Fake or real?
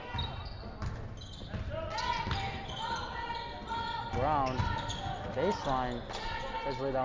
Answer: real